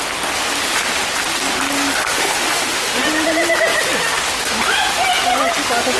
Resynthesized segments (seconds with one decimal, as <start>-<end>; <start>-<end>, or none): 2.1-3.0